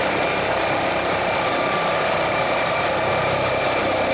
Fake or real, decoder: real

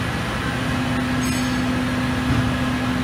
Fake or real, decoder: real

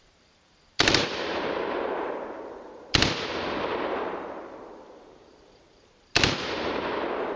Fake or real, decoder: fake, vocoder, BigVGAN v2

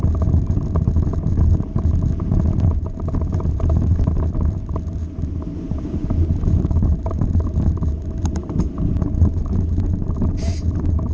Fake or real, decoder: fake, vocoder, BigVGAN v2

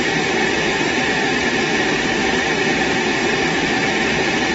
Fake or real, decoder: fake, vocoder, BigVGAN v2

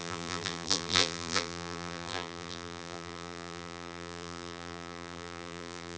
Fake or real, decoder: fake, vocoder, BigVGAN v2